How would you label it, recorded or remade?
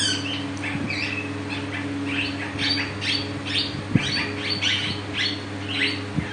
recorded